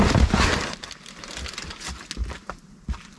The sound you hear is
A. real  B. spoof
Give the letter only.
A